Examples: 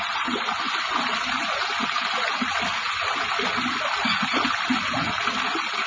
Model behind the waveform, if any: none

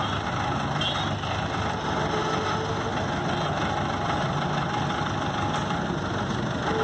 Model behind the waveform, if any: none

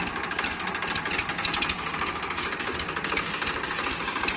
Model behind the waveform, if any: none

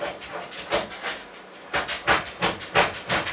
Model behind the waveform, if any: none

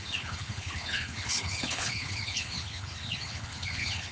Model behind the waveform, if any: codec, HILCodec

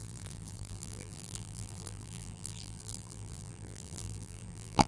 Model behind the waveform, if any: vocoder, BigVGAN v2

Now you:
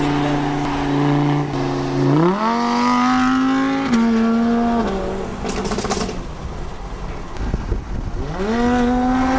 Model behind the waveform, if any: none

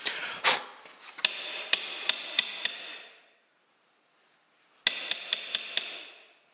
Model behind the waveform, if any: none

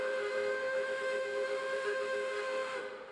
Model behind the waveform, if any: autoencoder, DAC-VAE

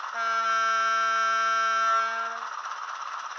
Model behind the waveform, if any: none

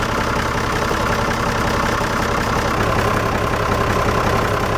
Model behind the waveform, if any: none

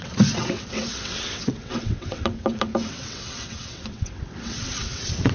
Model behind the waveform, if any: vocoder, WaveNeXt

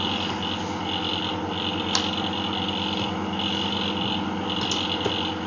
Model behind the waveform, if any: none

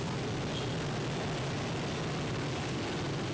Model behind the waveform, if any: none